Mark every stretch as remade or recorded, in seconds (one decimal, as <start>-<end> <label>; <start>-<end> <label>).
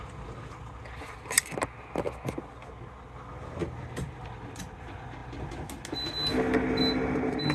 0.0-7.5 recorded